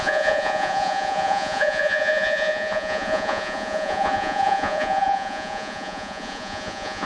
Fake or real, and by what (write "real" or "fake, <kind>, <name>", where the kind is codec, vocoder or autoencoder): fake, vocoder, Vocos